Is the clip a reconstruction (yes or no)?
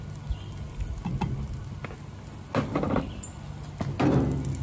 no